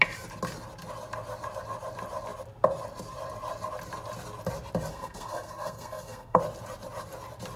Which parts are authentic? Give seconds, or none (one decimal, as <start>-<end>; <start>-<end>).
0.0-4.9; 6.4-7.6